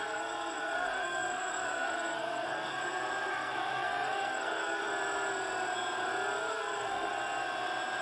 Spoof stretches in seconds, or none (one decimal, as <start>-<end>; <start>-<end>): 0.0-2.8; 3.3-4.8; 6.5-7.1